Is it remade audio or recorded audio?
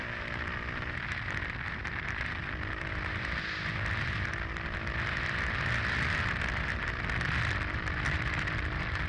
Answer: recorded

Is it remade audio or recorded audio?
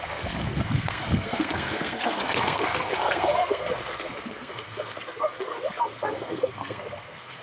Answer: remade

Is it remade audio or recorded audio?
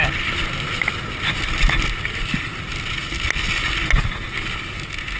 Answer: recorded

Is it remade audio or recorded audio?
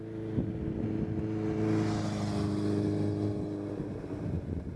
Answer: recorded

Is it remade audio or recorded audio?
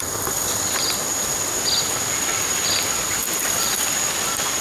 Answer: recorded